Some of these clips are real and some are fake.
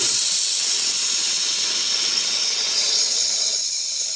fake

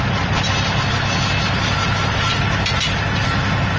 real